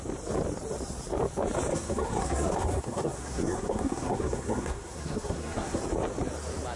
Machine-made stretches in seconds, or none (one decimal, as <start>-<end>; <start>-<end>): 1.7-5.8

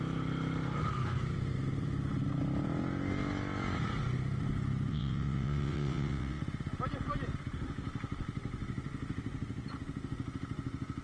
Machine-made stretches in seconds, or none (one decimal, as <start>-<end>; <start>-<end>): 4.9-6.4

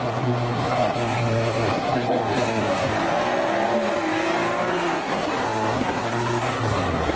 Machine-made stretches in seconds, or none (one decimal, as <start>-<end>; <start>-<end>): 0.0-2.9; 4.7-7.2

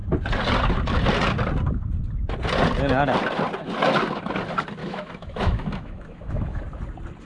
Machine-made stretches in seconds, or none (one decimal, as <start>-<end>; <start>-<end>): 4.8-6.6

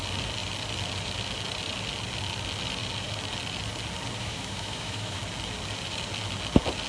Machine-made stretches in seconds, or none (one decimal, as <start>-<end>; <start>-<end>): 4.2-5.2

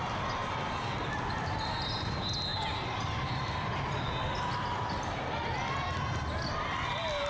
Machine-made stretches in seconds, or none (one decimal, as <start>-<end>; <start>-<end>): 2.5-6.0

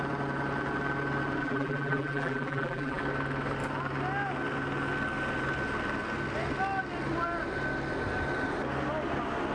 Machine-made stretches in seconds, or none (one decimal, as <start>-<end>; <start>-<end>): 1.4-3.0